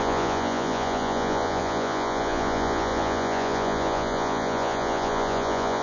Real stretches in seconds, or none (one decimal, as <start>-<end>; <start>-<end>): none